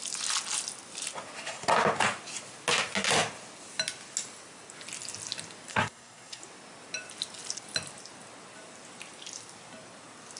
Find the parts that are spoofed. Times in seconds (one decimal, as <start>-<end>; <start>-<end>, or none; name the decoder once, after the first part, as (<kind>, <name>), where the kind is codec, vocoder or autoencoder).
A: 5.7-6.4 (codec, SNAC)